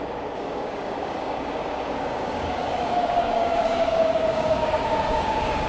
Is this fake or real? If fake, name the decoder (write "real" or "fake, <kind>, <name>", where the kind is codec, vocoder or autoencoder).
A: fake, codec, DAC